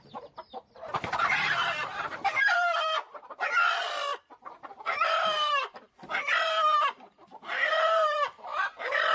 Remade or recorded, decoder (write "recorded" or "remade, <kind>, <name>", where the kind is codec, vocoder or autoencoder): remade, vocoder, BigVGAN v2